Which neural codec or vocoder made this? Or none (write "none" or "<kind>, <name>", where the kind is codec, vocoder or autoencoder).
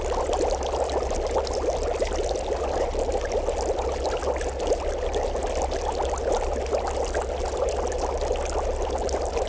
none